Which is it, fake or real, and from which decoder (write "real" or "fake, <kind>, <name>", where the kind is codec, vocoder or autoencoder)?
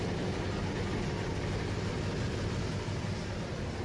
real